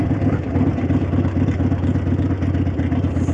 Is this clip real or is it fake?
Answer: real